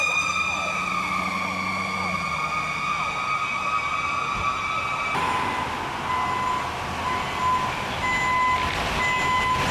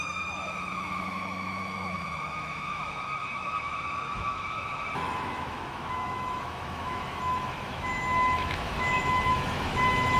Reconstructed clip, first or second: second